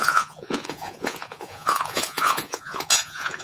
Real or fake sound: fake